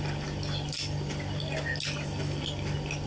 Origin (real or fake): real